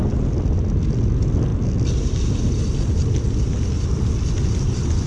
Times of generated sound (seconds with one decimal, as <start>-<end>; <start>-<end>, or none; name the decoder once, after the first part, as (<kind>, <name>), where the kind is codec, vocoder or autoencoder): none